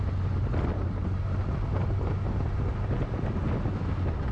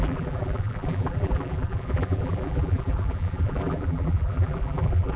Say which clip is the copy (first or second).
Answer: second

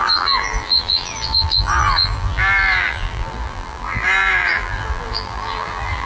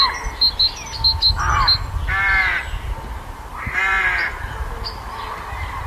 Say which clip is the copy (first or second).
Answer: first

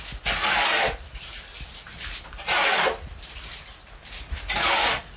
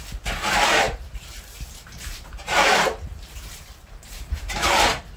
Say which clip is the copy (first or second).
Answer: second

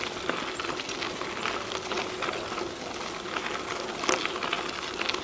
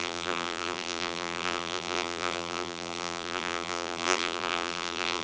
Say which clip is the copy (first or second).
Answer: second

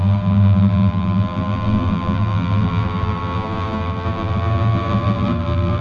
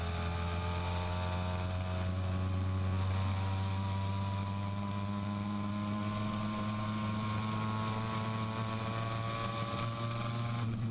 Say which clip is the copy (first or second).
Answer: first